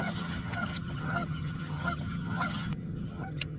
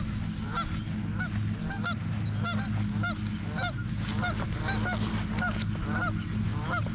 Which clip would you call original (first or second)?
second